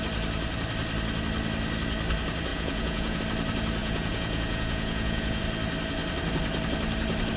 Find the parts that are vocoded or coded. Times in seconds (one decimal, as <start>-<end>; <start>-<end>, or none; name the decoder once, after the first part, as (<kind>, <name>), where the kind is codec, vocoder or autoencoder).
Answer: 2.5-3.2 (vocoder, Vocos); 3.8-5.4